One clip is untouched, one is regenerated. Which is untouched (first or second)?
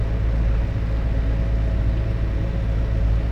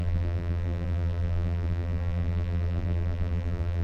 first